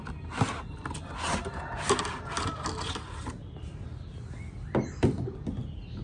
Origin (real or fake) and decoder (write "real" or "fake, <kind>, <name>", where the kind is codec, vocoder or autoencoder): real